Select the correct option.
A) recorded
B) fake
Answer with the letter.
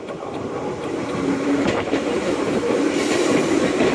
B